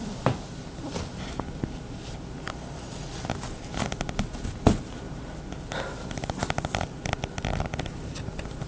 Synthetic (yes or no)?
no